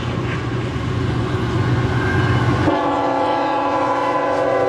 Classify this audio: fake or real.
fake